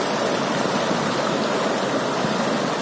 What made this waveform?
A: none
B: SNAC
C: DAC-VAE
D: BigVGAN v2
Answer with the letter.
A